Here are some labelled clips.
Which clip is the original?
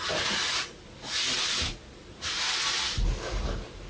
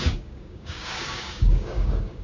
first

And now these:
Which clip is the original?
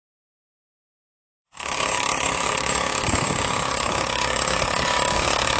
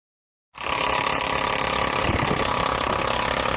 second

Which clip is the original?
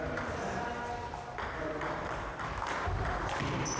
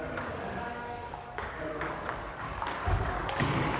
first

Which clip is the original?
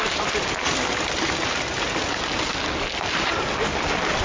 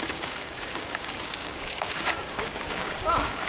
first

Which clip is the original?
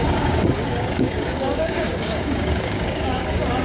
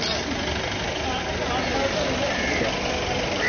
second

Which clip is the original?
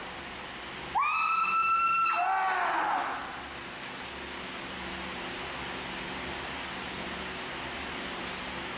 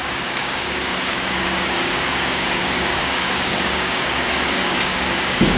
first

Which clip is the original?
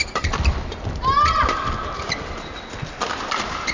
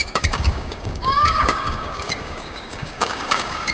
first